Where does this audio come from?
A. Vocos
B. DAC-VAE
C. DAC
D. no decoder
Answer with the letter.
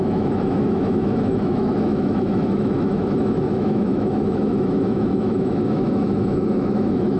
B